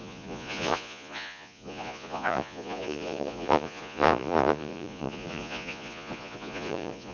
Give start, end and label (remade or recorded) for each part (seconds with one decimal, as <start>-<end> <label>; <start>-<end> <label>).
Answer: 0.0-7.1 remade